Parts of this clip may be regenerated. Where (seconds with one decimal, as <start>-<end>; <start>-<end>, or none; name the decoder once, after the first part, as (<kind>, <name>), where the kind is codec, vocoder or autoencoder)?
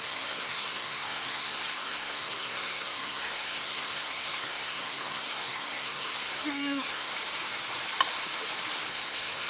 0.0-7.1 (codec, SNAC); 8.9-9.5